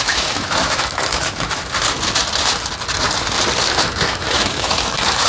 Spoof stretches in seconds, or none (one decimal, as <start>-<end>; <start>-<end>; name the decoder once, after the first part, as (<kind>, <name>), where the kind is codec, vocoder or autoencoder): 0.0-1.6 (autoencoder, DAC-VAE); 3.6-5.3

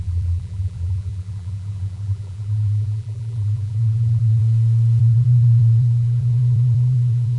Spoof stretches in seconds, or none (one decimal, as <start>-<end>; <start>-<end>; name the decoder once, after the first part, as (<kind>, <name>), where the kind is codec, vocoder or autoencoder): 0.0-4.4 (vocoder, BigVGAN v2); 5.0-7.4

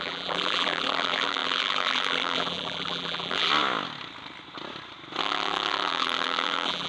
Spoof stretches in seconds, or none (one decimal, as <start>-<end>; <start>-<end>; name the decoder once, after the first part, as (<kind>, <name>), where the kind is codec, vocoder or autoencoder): 0.0-3.5 (vocoder, BigVGAN v2); 5.2-6.9

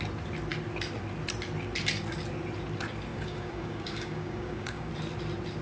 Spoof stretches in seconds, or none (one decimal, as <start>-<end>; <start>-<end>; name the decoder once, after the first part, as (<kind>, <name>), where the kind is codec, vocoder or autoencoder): 3.1-4.9 (codec, DAC)

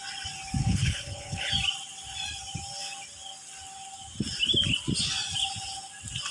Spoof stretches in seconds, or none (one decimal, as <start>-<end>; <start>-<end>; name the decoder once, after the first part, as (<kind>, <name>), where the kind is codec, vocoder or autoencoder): 0.6-1.5 (codec, HILCodec)

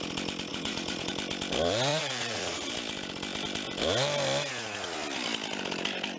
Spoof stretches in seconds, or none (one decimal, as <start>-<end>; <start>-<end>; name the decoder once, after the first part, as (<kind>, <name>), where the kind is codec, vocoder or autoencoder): 0.5-1.1 (vocoder, Vocos); 1.9-2.7